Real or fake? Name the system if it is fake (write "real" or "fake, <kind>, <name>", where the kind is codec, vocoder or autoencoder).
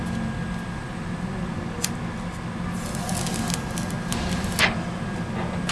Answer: real